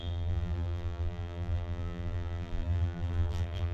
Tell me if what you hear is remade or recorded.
remade